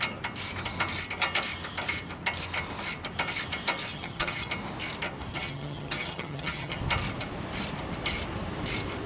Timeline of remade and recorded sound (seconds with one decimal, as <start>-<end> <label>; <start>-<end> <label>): 0.0-3.9 recorded; 3.9-4.5 remade; 4.5-5.3 recorded; 5.3-6.8 remade; 6.8-9.1 recorded